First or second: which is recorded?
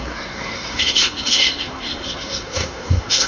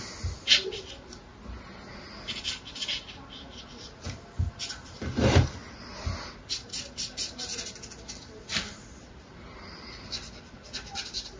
second